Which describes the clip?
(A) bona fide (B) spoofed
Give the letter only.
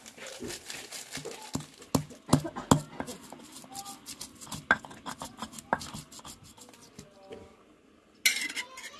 A